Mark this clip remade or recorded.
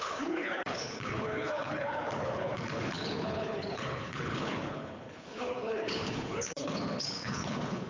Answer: remade